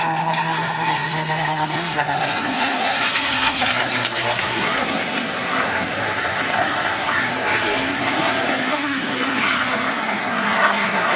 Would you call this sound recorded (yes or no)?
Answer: no